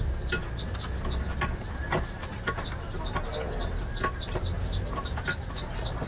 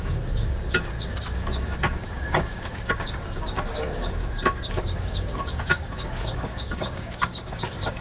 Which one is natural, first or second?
first